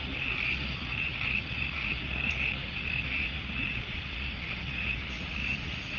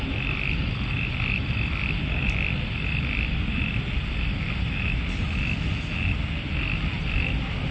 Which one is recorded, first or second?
second